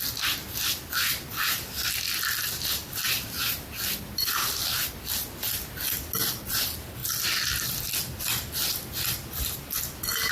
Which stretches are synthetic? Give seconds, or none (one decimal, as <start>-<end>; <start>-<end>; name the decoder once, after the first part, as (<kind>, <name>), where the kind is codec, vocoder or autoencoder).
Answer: none